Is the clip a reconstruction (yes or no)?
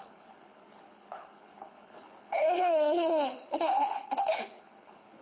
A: yes